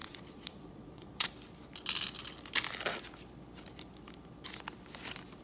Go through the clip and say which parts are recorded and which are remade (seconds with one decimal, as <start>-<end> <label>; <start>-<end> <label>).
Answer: 0.0-1.3 remade; 1.3-5.4 recorded